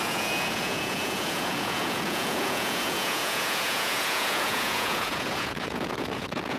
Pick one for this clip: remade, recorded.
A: remade